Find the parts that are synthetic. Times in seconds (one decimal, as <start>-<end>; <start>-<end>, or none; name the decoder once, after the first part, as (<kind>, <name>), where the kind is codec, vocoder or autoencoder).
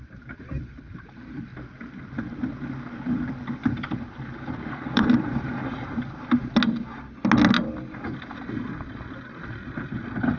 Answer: 0.0-1.5 (vocoder, BigVGAN v2); 4.7-5.6; 9.3-10.4